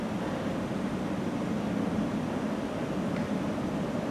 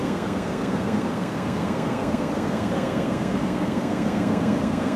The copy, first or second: second